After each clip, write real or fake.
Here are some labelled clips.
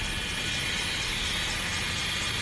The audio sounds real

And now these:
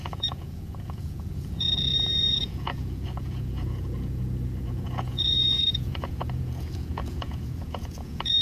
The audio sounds fake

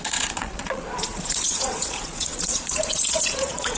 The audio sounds fake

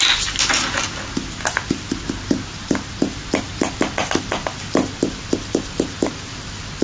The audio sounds real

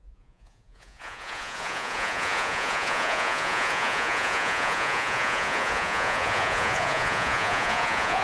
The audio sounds fake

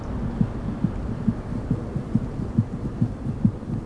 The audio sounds real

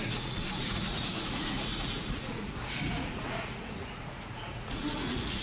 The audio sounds fake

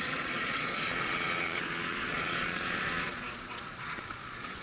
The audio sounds fake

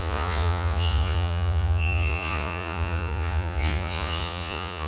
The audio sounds fake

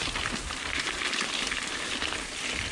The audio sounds real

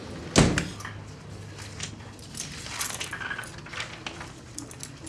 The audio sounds real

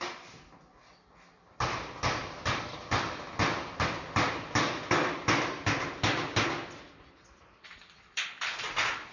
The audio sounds real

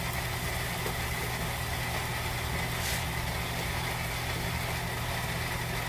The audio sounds real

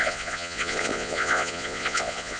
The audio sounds fake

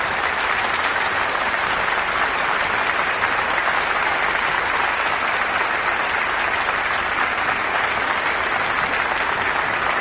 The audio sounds real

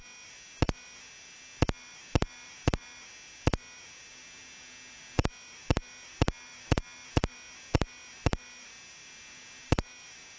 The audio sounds real